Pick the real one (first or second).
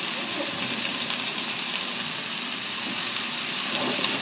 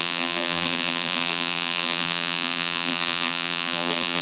first